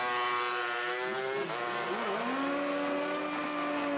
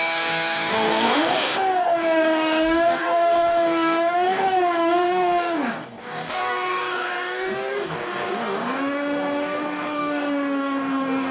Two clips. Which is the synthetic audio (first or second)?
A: second